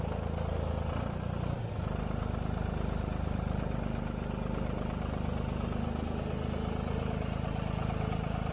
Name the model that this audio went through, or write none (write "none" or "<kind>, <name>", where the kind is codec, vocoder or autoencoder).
none